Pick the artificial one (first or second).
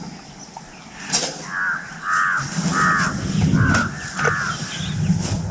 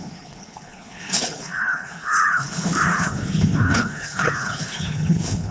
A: second